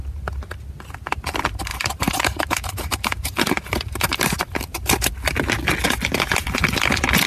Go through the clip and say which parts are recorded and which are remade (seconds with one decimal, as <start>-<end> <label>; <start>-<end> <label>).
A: 0.0-1.7 recorded; 1.7-5.1 remade; 5.1-7.3 recorded